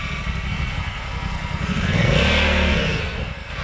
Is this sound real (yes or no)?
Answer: no